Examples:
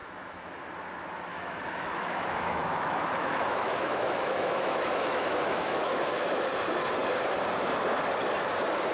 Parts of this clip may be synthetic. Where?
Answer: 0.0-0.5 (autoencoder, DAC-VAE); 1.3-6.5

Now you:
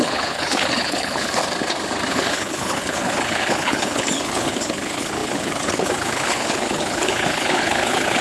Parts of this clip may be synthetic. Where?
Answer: 0.0-1.4 (codec, HILCodec); 2.1-8.2